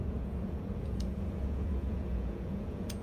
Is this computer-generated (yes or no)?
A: yes